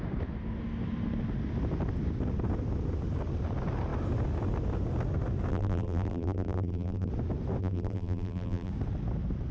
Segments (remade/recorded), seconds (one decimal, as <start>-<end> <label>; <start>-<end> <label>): 0.0-5.5 recorded; 5.5-7.1 remade; 7.1-7.6 recorded; 7.6-8.7 remade; 8.7-9.5 recorded

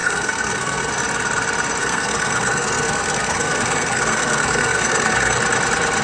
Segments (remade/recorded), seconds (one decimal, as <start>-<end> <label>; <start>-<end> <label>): 0.0-0.9 remade; 0.9-1.8 recorded; 1.8-5.4 remade; 5.4-6.0 recorded